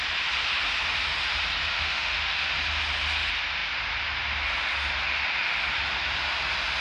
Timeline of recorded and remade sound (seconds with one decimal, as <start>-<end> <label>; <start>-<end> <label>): 0.0-1.7 recorded; 1.7-2.5 remade; 2.5-6.8 recorded